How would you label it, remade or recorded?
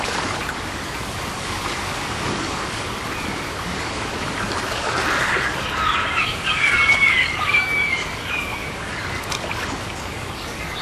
remade